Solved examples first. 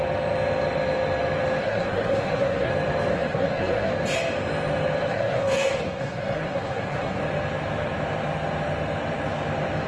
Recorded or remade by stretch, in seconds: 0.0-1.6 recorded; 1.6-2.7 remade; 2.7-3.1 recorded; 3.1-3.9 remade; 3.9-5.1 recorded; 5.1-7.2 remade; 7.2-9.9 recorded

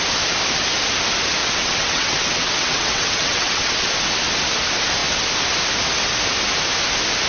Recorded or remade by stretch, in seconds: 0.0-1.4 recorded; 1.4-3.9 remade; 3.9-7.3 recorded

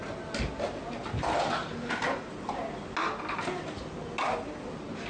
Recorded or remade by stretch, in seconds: 0.0-5.1 recorded

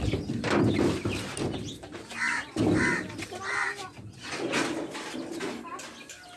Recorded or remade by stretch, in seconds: 0.0-6.4 recorded

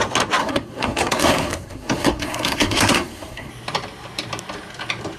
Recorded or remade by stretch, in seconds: 0.0-0.4 recorded; 0.4-3.5 remade; 3.5-5.2 recorded